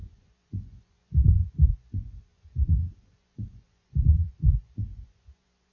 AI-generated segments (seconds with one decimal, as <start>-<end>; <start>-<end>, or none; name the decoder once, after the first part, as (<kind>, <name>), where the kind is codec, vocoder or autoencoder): 0.0-5.7 (vocoder, Vocos)